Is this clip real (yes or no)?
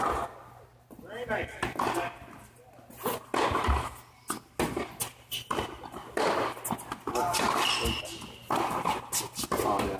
yes